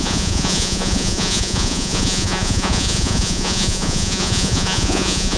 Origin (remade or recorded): remade